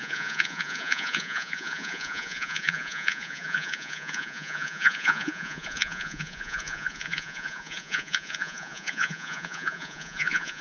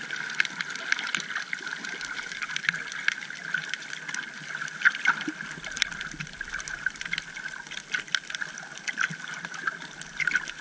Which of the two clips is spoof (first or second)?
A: first